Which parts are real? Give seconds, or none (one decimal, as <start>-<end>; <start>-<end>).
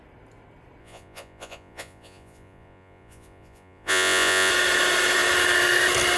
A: 0.0-0.8; 4.5-6.2